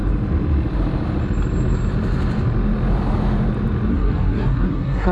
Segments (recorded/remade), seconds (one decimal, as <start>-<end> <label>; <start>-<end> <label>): 0.0-3.9 recorded; 3.9-5.1 remade